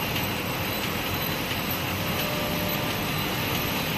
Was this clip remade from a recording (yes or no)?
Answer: no